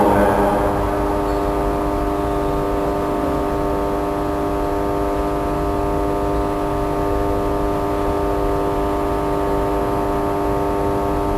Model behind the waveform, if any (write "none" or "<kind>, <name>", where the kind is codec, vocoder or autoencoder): none